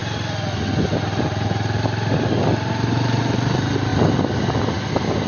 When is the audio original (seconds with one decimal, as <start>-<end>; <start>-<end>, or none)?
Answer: 0.0-5.3